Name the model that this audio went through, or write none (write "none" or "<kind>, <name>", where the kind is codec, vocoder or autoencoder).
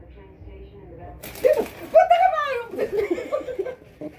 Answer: none